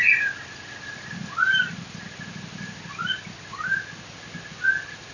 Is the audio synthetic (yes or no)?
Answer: no